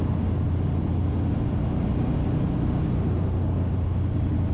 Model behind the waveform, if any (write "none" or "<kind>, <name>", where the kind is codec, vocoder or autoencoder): none